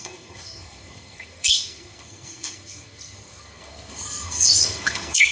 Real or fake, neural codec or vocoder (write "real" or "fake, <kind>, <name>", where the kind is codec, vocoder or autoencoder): fake, codec, SNAC